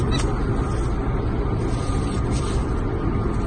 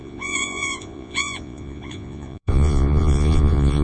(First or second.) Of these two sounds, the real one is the first